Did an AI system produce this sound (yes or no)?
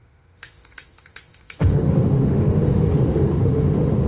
yes